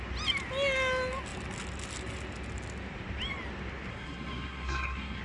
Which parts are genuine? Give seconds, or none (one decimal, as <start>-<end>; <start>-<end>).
0.0-3.9